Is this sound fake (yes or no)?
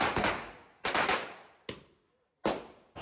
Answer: no